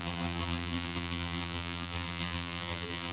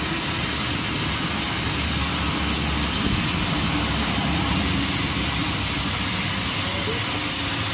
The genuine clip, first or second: second